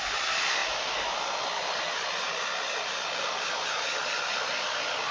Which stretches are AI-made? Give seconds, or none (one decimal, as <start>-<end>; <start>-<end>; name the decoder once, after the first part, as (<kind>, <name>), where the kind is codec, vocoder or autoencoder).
none